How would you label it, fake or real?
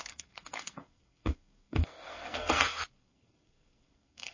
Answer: fake